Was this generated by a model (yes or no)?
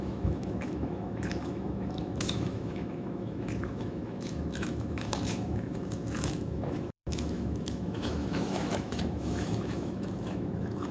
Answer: yes